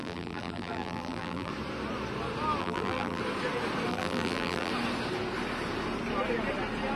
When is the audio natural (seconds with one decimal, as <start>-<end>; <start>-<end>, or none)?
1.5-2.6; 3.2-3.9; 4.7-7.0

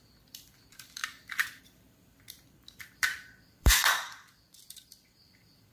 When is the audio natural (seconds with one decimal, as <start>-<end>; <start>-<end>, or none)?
1.0-1.6

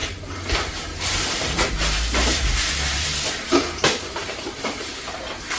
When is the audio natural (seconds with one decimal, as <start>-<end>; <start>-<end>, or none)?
none

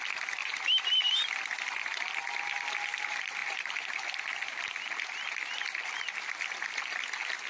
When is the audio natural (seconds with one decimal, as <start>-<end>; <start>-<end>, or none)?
0.0-0.4; 1.1-7.5

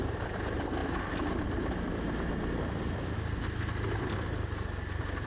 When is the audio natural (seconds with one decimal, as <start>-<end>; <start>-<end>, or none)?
0.0-0.8; 3.6-5.3

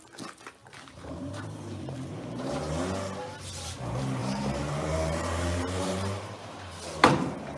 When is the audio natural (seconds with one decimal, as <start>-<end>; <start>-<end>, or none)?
0.0-0.6; 2.5-4.2; 6.8-7.6

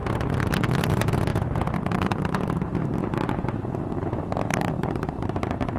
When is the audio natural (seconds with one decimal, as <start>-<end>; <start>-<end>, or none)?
0.0-0.8